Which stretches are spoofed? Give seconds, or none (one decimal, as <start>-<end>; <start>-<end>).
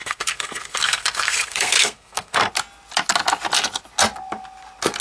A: 0.0-2.5